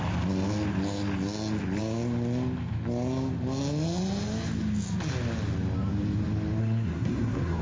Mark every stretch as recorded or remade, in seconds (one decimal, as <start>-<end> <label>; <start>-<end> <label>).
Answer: 0.0-6.6 recorded; 6.6-7.6 remade